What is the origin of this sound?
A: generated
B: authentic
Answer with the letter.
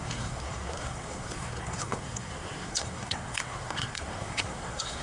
A